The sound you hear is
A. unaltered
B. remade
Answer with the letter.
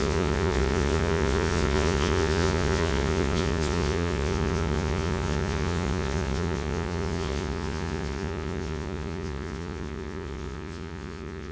B